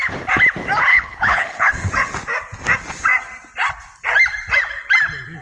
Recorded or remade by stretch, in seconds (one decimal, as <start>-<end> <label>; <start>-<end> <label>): 0.0-0.9 recorded; 0.9-1.9 remade; 1.9-5.4 recorded

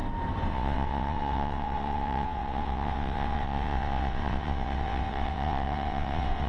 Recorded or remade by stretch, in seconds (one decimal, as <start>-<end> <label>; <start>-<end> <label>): 0.0-0.5 recorded; 0.5-6.5 remade